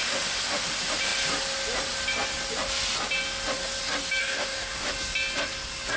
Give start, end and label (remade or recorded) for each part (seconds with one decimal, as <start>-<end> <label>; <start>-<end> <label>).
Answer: 0.0-4.2 recorded; 4.2-4.9 remade; 4.9-6.0 recorded